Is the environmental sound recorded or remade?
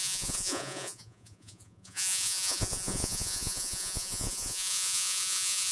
remade